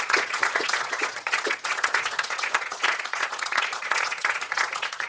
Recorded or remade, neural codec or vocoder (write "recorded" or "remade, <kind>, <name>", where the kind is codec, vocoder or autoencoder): remade, vocoder, Vocos